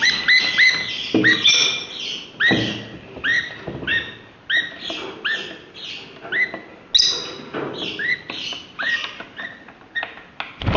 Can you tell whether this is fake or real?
real